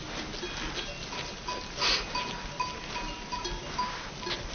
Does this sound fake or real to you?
real